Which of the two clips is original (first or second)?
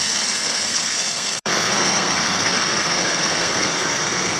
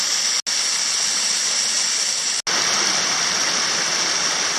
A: second